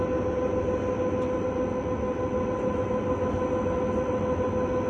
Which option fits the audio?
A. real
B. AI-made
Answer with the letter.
A